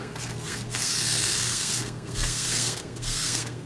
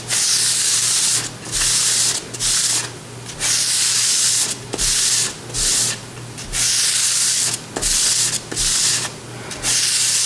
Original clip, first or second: second